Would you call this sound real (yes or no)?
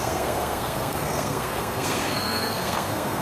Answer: no